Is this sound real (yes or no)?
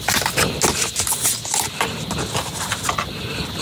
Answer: yes